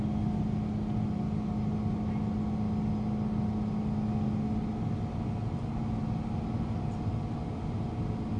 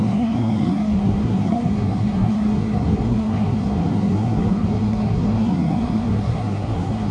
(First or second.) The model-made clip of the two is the second